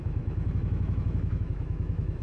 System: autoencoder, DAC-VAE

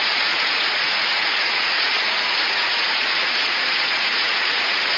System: vocoder, Vocos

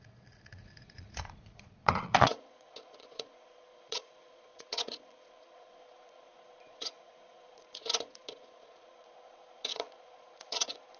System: vocoder, Vocos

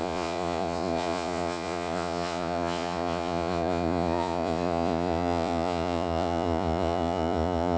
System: vocoder, Vocos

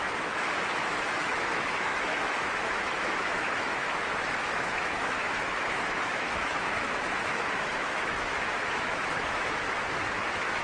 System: autoencoder, DAC-VAE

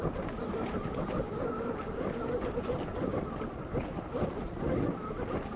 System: none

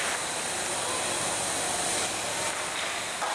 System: none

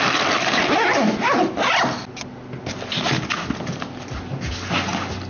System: none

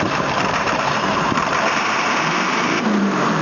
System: vocoder, BigVGAN v2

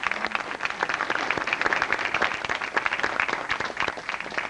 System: none